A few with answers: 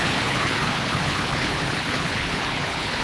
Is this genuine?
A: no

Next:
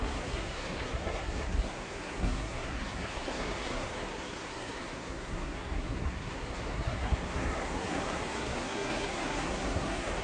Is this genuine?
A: no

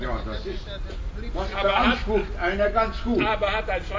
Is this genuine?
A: yes